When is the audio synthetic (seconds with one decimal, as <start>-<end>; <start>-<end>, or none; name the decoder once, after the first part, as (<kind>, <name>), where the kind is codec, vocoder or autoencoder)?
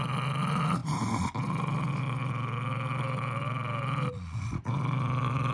none